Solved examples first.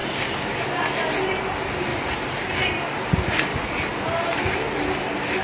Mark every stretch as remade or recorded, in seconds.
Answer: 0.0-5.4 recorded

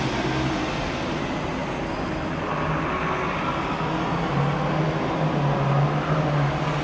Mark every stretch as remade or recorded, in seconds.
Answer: 0.0-6.8 recorded